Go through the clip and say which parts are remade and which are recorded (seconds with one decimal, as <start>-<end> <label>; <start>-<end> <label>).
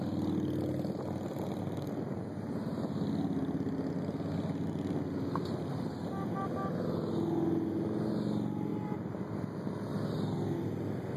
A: 0.0-8.7 recorded; 8.7-9.2 remade; 9.2-11.2 recorded